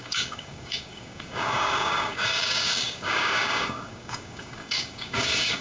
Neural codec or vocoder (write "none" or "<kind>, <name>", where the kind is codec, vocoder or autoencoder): codec, DAC